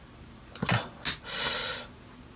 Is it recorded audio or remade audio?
recorded